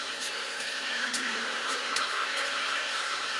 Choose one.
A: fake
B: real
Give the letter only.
A